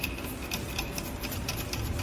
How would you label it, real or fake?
real